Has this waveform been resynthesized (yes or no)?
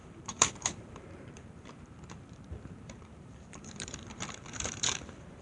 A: yes